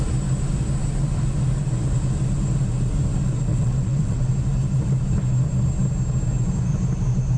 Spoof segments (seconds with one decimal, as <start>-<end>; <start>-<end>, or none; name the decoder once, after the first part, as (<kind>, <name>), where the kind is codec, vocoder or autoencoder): 3.5-4.3 (vocoder, WaveNeXt)